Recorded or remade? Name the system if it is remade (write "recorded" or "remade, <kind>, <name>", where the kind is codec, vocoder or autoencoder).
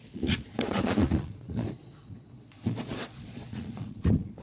remade, vocoder, Vocos